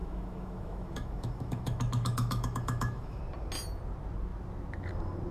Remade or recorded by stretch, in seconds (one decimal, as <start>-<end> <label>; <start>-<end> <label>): 0.0-3.2 remade; 3.2-5.3 recorded